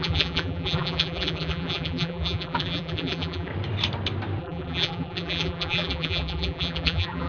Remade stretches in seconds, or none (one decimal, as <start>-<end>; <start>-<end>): 0.0-3.5; 4.4-7.3